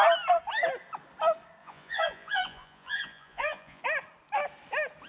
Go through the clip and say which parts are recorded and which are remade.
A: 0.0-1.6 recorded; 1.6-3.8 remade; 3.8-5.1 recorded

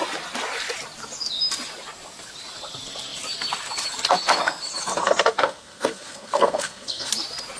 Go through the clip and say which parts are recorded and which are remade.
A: 0.0-5.0 recorded; 5.0-7.1 remade; 7.1-7.6 recorded

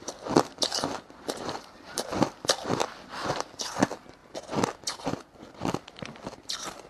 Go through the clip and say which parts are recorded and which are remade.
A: 0.0-4.2 remade; 4.2-6.1 recorded; 6.1-6.9 remade

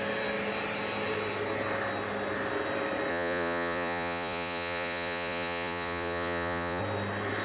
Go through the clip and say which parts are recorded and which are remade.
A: 0.0-3.1 recorded; 3.1-6.8 remade; 6.8-7.4 recorded

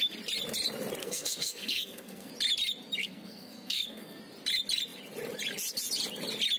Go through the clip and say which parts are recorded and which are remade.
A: 0.0-1.0 recorded; 1.0-2.3 remade; 2.3-3.0 recorded; 3.0-4.2 remade; 4.2-6.6 recorded